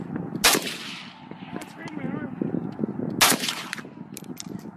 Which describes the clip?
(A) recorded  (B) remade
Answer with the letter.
A